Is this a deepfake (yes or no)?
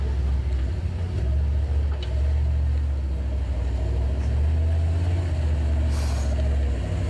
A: no